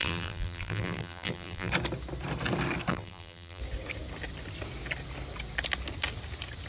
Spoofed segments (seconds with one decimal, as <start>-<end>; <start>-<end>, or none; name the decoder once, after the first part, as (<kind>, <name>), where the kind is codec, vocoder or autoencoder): 0.0-1.7 (vocoder, BigVGAN v2); 2.9-3.6